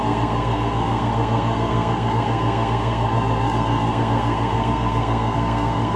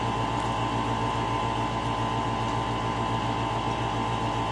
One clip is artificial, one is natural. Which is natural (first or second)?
second